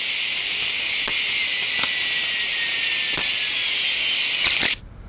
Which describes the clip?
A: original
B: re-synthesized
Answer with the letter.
A